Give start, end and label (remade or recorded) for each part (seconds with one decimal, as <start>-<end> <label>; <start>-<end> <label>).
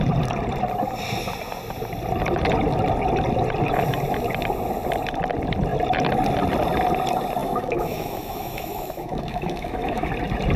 0.0-7.4 recorded; 7.4-10.1 remade; 10.1-10.6 recorded